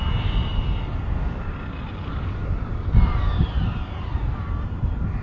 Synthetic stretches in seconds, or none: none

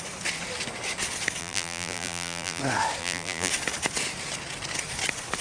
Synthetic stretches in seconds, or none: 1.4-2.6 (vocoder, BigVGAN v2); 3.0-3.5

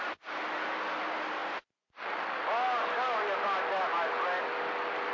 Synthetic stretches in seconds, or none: none

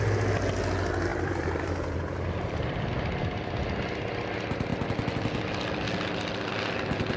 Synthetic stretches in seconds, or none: 1.1-2.9 (vocoder, BigVGAN v2)

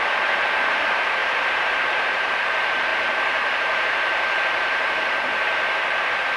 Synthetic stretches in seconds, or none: 0.0-6.4 (vocoder, BigVGAN v2)